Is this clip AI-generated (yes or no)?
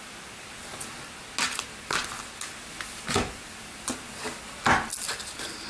no